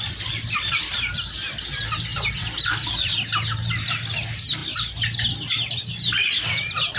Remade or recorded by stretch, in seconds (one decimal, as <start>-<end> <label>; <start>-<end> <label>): 0.0-7.0 recorded